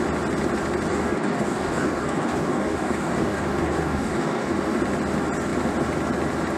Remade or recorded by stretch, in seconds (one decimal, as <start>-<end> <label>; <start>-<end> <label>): 0.0-0.9 recorded; 0.9-4.8 remade; 4.8-6.6 recorded